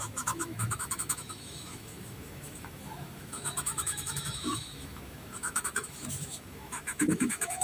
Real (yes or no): no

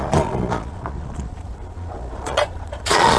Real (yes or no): no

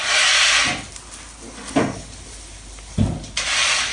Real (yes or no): yes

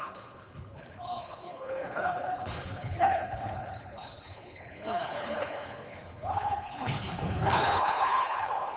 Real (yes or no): no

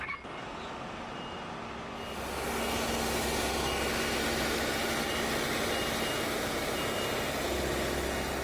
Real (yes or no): yes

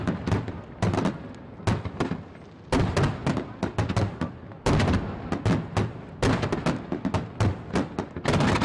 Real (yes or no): yes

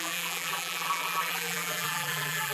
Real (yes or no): no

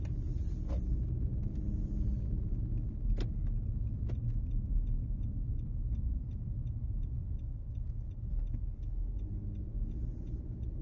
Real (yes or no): yes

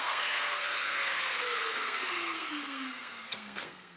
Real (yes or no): no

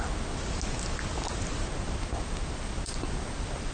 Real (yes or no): yes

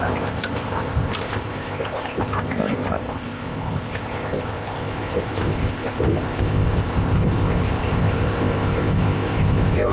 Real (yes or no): no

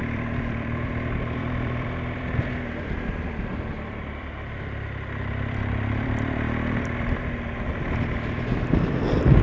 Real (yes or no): no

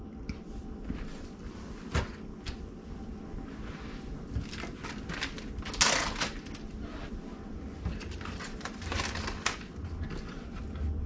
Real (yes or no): yes